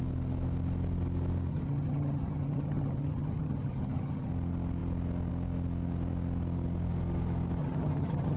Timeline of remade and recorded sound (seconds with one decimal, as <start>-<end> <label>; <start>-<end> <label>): 0.0-1.5 recorded; 1.5-4.3 remade; 4.3-7.6 recorded; 7.6-8.4 remade